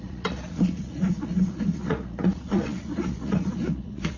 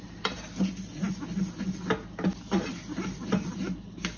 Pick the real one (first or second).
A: second